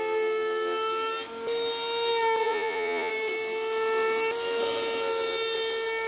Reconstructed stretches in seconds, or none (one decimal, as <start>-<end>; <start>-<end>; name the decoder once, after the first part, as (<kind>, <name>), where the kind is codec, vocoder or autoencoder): 2.4-3.1 (vocoder, Vocos)